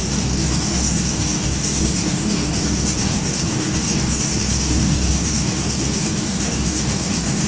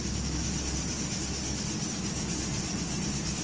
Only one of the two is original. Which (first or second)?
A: second